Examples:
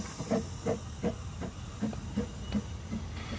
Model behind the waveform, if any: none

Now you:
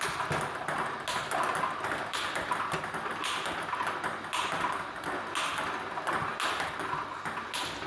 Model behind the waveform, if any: none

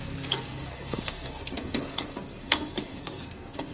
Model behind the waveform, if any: codec, SNAC